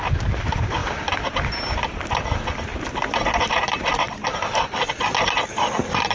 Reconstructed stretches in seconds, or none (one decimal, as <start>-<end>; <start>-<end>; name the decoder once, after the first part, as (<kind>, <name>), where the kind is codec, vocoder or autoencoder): none

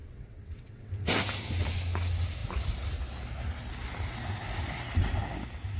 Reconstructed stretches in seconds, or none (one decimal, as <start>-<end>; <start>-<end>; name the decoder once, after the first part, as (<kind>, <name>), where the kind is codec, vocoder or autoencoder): 0.0-0.9 (vocoder, WaveNeXt)